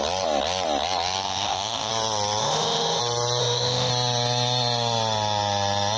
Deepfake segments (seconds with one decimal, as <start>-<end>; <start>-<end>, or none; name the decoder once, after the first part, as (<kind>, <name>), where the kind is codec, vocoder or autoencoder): 1.2-1.9 (autoencoder, DAC-VAE); 2.4-3.0; 3.4-3.9